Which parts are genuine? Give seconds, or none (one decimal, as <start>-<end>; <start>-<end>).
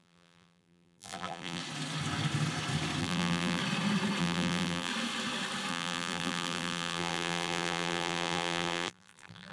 1.6-3.0; 3.6-4.2; 4.9-5.7